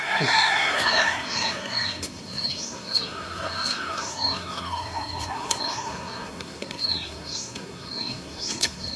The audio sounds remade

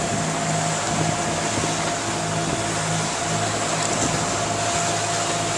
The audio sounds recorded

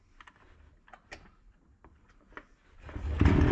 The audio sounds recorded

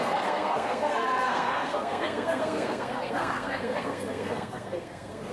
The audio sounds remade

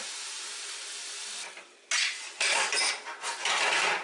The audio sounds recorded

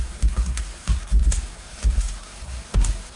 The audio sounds remade